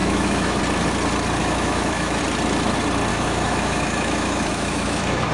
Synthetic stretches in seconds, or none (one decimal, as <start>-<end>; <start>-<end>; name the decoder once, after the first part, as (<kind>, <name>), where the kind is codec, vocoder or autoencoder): 0.0-0.6 (autoencoder, DAC-VAE); 1.4-2.2; 3.1-5.3